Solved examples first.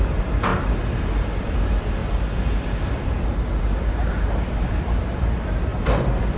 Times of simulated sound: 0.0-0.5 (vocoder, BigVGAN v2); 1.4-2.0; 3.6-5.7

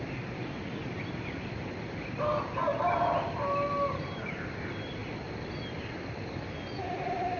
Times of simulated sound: 0.0-2.6 (vocoder, BigVGAN v2); 3.9-5.0; 6.8-7.4

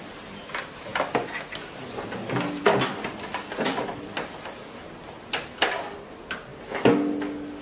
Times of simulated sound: none

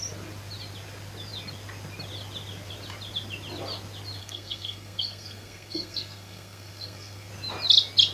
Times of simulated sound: 4.2-7.3 (codec, SNAC)

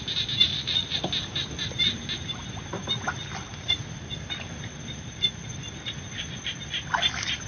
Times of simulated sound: 0.5-1.0 (vocoder, Vocos)

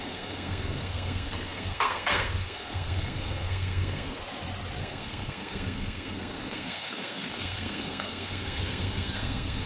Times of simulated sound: 0.0-4.2 (codec, SNAC); 4.8-9.7

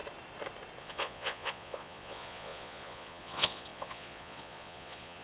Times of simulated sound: 0.8-5.2 (vocoder, Vocos)

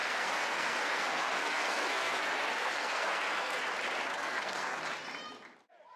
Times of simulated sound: 0.0-3.6 (codec, SNAC); 4.1-4.8